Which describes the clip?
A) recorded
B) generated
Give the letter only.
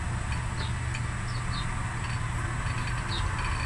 A